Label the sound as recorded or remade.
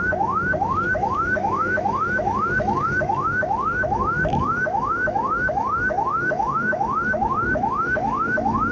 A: remade